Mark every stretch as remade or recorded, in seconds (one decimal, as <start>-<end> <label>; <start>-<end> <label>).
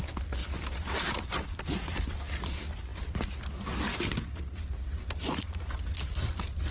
0.0-6.7 recorded